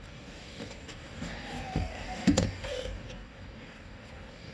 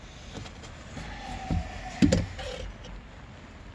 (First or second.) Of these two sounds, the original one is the second